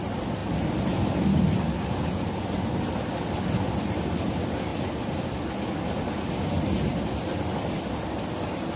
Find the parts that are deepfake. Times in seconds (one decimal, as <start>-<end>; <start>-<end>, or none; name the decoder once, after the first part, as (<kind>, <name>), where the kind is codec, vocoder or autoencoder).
none